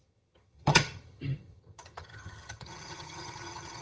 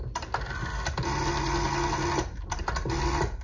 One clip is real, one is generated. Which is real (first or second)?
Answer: second